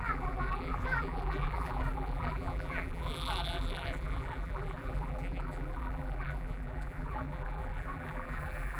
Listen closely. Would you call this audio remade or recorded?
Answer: remade